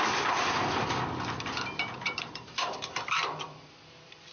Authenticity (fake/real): fake